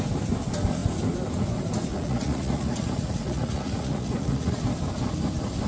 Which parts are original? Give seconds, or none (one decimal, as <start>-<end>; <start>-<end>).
0.0-1.9; 4.6-5.7